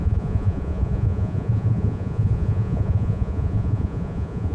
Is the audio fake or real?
fake